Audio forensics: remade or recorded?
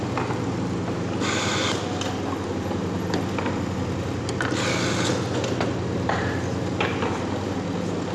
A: recorded